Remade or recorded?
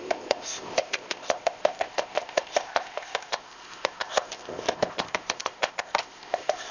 remade